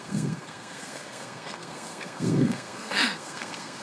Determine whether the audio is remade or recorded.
remade